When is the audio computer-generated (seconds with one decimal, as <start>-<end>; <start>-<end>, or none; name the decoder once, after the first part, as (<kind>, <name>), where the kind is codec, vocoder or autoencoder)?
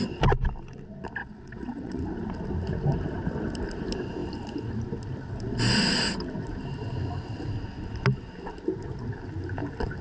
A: 1.2-2.0 (vocoder, WaveNeXt)